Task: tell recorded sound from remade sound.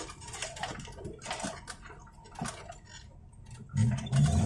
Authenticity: recorded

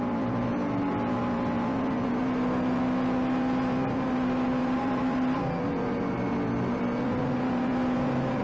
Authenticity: recorded